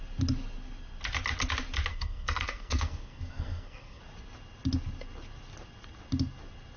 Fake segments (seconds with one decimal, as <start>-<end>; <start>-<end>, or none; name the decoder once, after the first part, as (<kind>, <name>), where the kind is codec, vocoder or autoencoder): 1.9-4.0 (codec, SNAC)